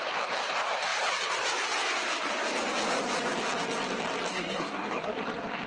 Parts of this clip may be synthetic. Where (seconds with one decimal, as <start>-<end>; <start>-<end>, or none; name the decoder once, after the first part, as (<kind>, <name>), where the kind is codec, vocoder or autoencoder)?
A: 4.3-5.1 (codec, SNAC)